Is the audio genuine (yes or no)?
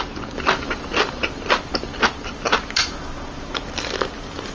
yes